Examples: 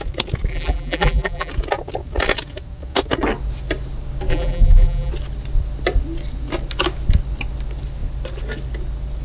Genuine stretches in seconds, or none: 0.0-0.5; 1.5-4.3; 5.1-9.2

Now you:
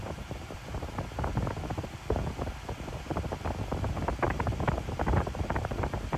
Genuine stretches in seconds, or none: 0.6-4.3

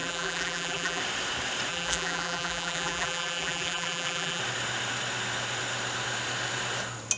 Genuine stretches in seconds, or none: 1.0-1.7; 4.4-7.2

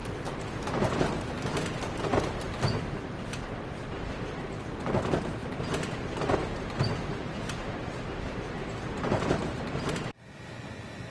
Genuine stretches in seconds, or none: 0.0-5.4; 9.9-11.1